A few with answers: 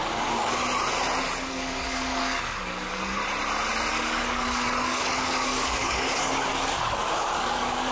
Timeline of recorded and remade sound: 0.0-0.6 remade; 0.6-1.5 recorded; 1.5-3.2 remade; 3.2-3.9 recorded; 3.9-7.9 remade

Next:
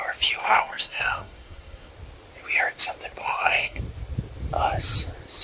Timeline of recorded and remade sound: 0.0-0.4 recorded; 0.4-1.9 remade; 1.9-3.2 recorded; 3.2-3.8 remade; 3.8-5.4 recorded

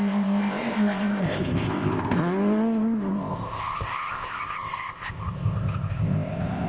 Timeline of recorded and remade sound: 0.0-2.2 remade; 2.2-3.1 recorded; 3.1-6.7 remade